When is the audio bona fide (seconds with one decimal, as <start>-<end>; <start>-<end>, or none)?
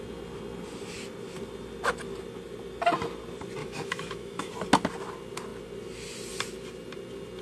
0.0-3.6; 4.5-7.4